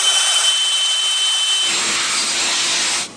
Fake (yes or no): no